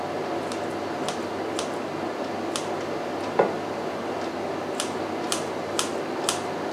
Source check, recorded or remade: recorded